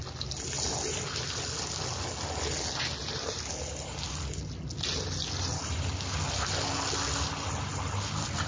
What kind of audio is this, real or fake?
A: real